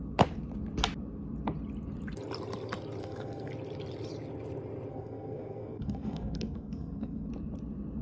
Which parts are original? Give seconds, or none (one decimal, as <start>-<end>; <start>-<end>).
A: 0.0-3.0; 3.5-4.9; 7.3-8.0